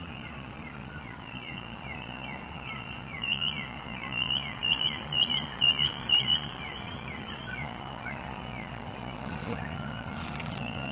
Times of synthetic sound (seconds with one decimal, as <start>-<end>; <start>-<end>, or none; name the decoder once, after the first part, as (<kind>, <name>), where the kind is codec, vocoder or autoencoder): 0.0-10.9 (vocoder, Vocos)